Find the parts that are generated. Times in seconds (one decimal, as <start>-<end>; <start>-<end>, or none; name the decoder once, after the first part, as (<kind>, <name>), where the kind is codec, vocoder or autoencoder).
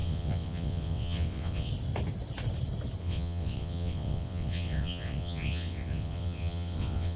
0.0-1.7 (vocoder, WaveNeXt); 3.0-7.2